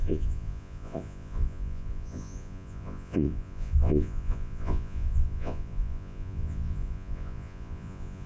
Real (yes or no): no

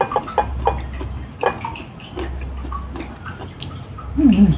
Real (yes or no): yes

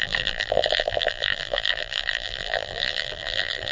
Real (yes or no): no